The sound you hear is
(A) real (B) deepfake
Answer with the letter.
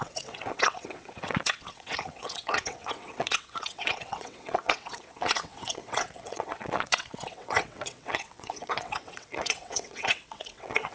B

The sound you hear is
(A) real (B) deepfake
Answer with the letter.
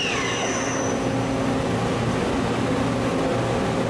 A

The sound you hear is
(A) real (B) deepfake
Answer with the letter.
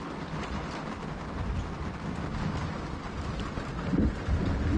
A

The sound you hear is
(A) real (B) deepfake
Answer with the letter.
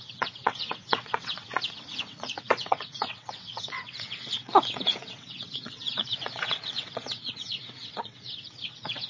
B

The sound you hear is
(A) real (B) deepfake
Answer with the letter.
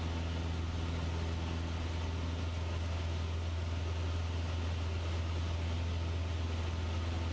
A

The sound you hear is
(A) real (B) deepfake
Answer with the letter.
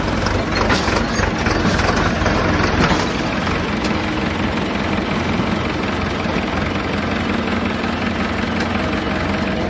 A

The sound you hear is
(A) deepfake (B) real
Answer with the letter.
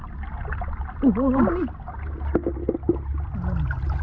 B